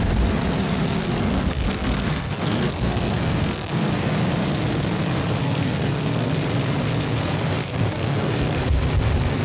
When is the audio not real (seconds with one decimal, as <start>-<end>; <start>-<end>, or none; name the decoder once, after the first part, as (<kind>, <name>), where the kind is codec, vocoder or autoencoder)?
1.0-3.9 (codec, SNAC); 5.4-6.3; 7.6-8.6